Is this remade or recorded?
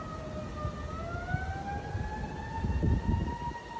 recorded